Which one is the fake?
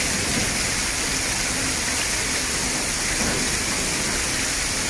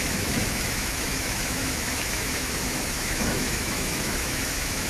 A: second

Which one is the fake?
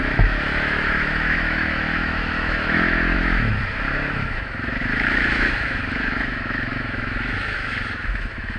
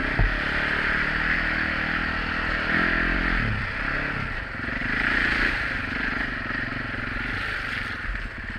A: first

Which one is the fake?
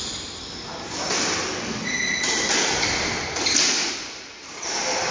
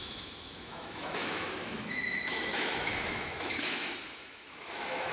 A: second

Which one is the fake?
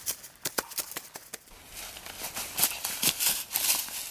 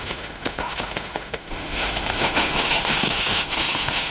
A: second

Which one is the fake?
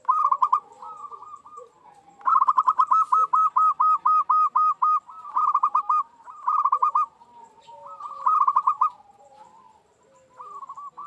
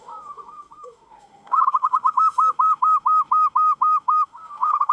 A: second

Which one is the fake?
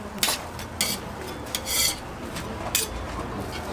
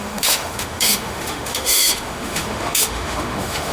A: second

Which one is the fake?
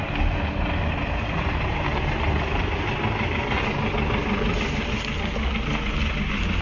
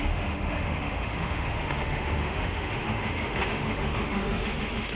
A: second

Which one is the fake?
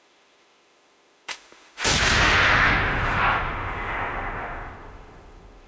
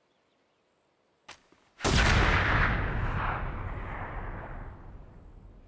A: first